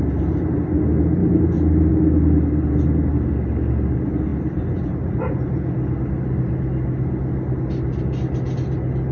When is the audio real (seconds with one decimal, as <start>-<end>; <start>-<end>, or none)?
0.0-9.1